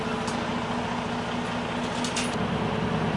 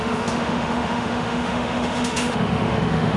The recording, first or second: first